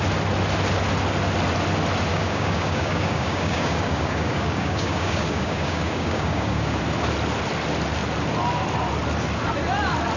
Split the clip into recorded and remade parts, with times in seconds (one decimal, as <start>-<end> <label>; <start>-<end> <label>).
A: 0.0-2.1 recorded; 2.1-6.8 remade; 6.8-10.2 recorded